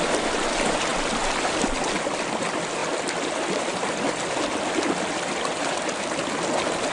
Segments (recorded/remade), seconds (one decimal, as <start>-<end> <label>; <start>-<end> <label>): 0.0-6.9 recorded